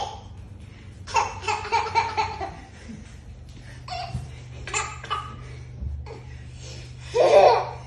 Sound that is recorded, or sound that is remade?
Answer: recorded